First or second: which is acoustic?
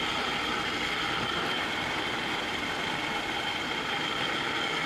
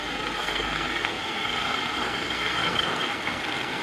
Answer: first